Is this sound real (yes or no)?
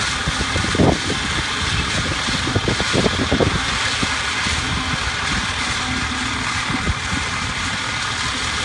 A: yes